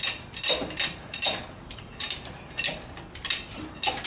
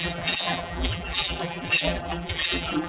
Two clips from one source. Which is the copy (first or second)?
second